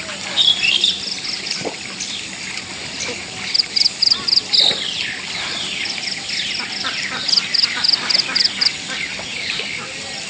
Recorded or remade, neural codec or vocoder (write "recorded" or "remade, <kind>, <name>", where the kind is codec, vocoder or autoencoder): recorded